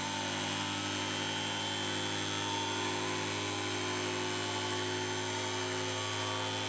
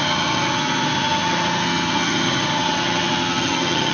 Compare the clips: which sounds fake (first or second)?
second